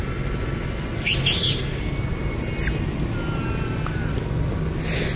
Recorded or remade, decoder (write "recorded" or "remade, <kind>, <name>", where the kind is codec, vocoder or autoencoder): recorded